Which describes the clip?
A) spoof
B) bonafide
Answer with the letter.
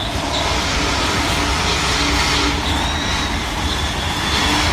B